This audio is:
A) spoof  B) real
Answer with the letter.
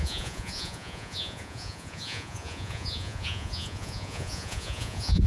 A